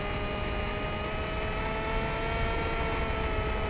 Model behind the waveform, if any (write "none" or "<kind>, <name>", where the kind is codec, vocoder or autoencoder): none